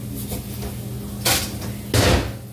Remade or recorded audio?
recorded